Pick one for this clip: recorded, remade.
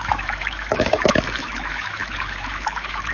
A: remade